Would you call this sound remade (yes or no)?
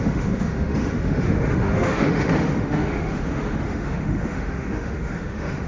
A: yes